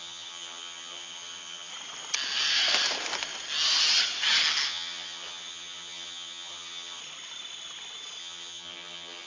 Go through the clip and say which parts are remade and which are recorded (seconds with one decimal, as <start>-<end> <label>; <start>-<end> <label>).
0.0-1.7 remade; 1.7-4.7 recorded; 4.7-7.0 remade; 7.0-8.2 recorded; 8.2-9.3 remade